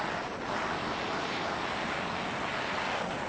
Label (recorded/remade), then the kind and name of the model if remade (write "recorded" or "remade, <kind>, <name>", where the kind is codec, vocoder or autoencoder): recorded